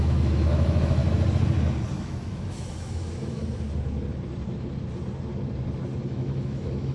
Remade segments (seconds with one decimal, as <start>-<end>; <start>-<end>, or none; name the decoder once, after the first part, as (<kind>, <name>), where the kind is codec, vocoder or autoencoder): 0.0-1.0 (autoencoder, DAC-VAE); 1.9-3.4; 6.1-6.9